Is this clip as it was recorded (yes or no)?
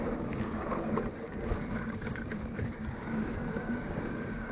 no